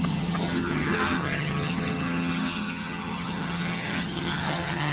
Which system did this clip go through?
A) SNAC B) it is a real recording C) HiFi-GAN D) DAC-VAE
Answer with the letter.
C